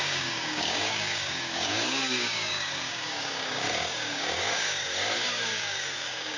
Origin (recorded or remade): remade